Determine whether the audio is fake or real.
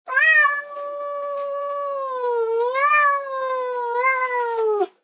real